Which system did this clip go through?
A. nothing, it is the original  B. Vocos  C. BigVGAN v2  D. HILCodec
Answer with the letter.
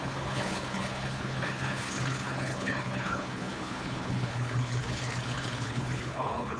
D